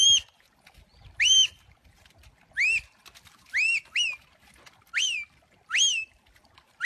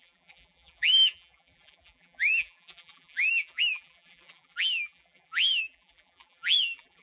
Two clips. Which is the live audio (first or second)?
first